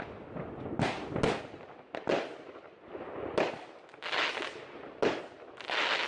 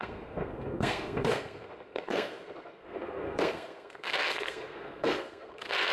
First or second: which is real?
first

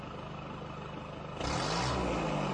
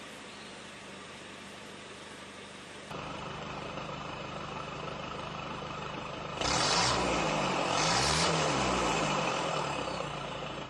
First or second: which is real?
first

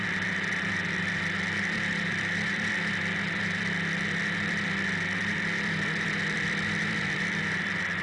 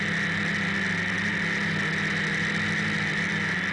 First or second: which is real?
second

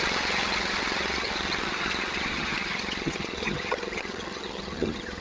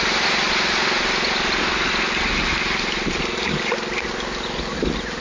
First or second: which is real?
second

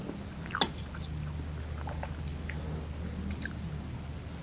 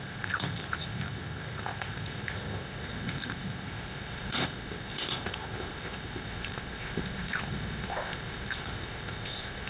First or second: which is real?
first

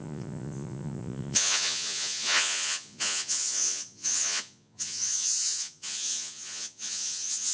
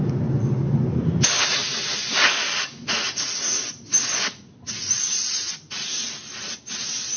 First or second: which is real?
second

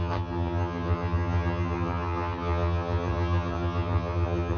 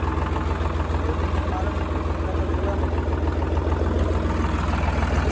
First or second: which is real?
second